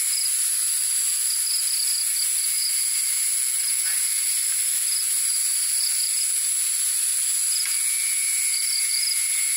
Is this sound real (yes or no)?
yes